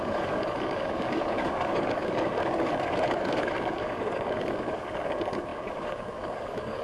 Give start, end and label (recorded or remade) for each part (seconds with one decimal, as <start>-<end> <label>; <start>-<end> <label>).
0.0-6.8 remade